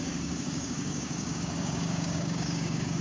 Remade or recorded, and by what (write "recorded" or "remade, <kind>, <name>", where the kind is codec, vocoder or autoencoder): remade, codec, DAC